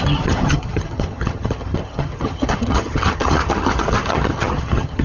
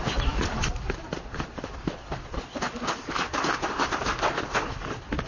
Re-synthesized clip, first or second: first